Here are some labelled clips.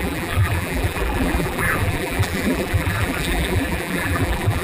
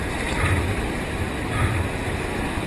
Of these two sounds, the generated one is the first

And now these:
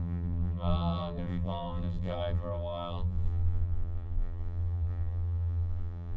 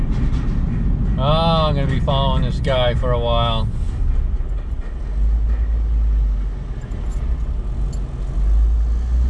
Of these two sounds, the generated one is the first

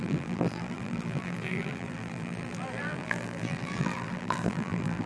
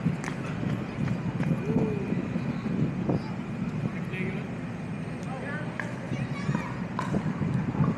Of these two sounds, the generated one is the first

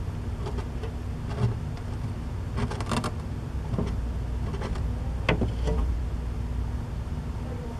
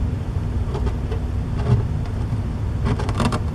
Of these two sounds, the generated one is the second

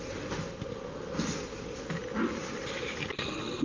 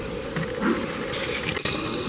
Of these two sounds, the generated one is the second